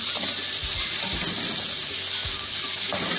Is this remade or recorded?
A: recorded